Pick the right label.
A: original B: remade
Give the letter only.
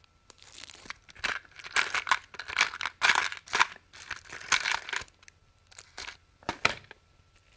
A